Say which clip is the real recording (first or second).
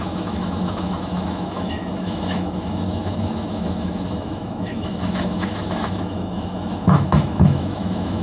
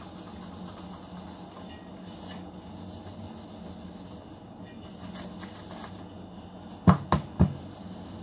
second